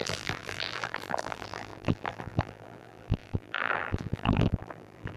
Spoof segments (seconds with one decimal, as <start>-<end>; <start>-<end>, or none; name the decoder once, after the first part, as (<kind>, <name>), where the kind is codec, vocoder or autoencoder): 0.0-5.2 (vocoder, BigVGAN v2)